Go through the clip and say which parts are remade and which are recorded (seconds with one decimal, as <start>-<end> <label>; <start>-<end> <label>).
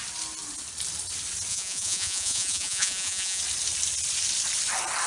0.0-1.5 recorded; 1.5-3.4 remade; 3.4-5.1 recorded